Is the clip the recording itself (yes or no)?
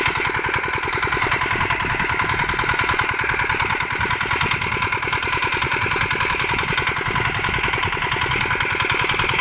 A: yes